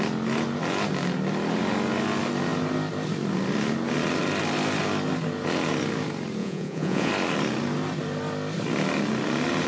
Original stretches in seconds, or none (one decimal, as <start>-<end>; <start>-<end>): 0.0-6.4; 7.1-9.7